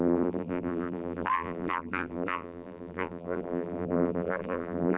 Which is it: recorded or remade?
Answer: remade